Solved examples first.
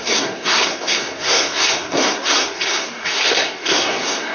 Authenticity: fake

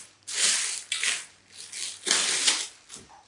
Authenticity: real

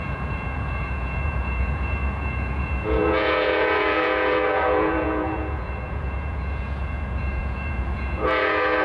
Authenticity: fake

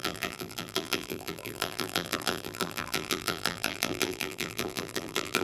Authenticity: fake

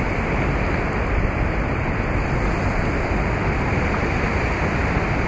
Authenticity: real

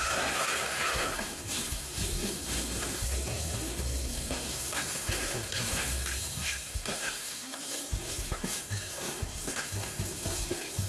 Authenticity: fake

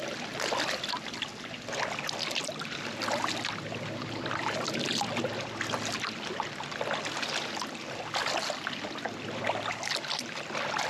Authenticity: real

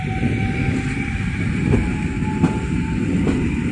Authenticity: real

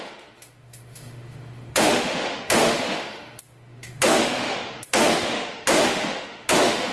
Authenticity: fake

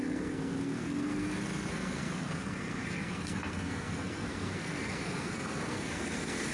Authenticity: fake